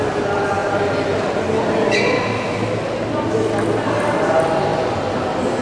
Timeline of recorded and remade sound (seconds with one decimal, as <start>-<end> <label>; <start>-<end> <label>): 0.0-5.6 recorded